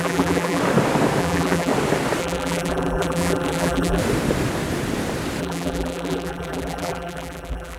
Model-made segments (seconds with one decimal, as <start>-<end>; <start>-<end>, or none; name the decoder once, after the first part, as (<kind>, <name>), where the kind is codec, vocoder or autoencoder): 0.0-0.6 (vocoder, BigVGAN v2); 1.2-1.7; 2.2-4.0; 5.4-7.8